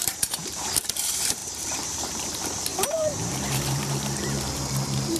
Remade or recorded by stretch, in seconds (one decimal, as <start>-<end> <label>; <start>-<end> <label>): 0.0-5.2 remade